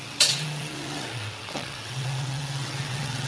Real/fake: fake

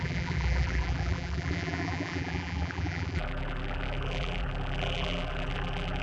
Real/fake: fake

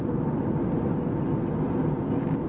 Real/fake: real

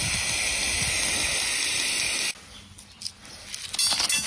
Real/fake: real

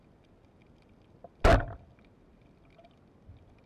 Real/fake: real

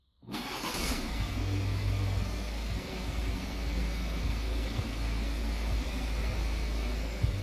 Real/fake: fake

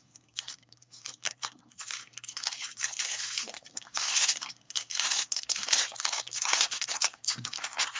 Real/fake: fake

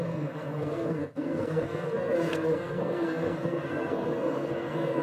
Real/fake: fake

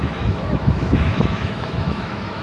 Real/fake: fake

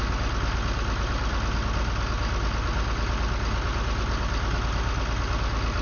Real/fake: real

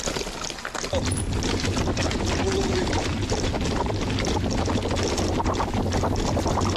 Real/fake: real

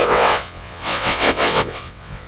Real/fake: fake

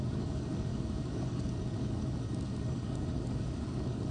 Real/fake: fake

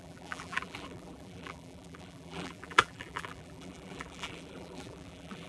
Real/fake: fake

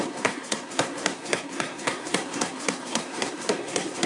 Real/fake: fake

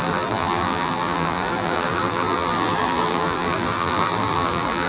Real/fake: fake